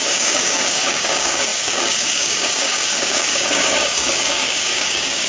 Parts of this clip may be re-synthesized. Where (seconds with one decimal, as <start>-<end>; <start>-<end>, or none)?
0.0-5.3